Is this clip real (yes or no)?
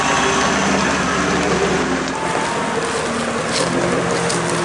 yes